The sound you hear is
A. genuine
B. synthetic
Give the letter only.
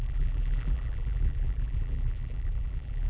B